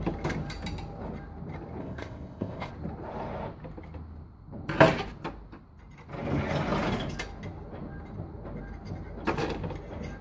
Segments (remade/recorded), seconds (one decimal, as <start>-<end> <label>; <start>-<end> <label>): 0.0-1.8 recorded; 1.8-2.7 remade; 2.7-10.2 recorded

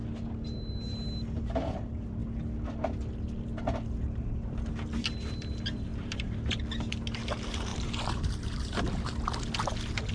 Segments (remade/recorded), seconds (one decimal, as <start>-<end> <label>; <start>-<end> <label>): 0.0-5.9 recorded; 5.9-6.5 remade; 6.5-7.7 recorded; 7.7-8.8 remade; 8.8-10.1 recorded

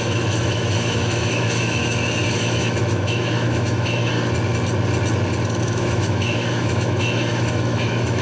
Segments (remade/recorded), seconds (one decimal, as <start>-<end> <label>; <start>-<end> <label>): 0.0-1.8 remade; 1.8-2.4 recorded; 2.4-4.0 remade; 4.0-5.6 recorded; 5.6-8.2 remade